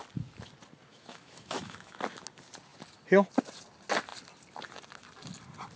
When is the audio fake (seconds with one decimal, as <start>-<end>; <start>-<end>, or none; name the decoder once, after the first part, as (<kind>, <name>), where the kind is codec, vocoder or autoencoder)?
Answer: 0.9-2.0 (autoencoder, DAC-VAE)